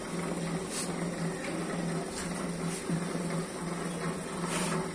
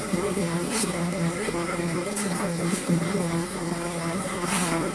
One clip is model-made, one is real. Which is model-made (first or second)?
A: second